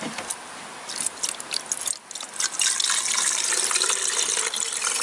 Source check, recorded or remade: recorded